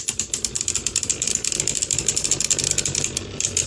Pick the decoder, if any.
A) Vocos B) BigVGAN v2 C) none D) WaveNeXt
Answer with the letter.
B